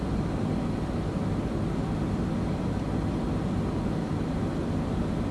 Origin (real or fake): real